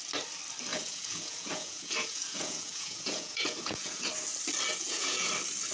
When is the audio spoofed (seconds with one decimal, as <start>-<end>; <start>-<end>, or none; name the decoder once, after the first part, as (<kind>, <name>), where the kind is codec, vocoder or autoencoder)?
0.7-4.1 (vocoder, Vocos); 4.7-5.3